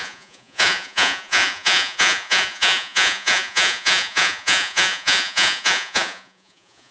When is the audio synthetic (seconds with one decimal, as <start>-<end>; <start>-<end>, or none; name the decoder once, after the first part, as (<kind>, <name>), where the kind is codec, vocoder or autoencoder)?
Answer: 0.0-6.9 (vocoder, Vocos)